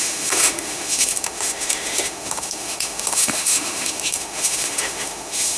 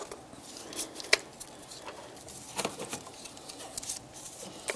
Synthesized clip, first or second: first